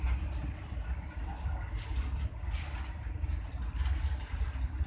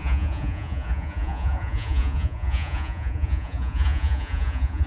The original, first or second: first